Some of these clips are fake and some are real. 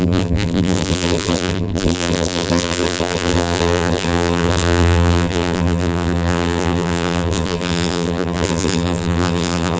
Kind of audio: fake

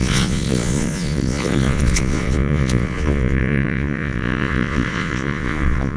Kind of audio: fake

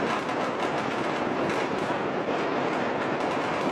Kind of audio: real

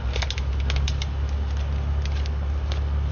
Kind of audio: real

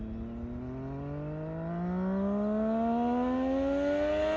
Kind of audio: real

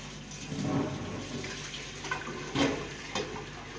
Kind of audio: real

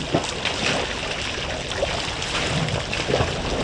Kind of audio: real